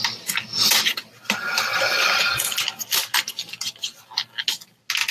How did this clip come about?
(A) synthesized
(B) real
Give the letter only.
B